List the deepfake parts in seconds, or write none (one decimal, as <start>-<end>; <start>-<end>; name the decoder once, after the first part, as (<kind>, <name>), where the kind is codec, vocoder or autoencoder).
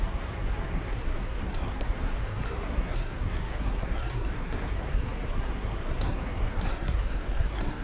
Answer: 0.0-7.8 (codec, SNAC)